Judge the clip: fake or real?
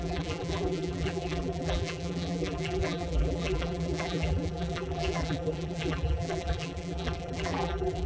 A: fake